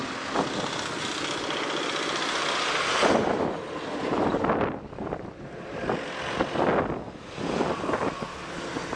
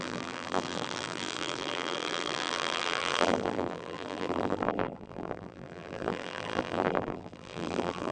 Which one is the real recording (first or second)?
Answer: first